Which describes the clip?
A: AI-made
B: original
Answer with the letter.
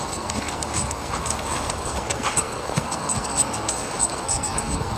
A